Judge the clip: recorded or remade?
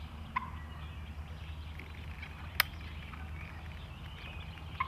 recorded